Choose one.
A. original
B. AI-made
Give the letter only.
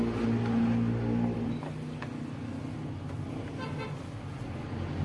A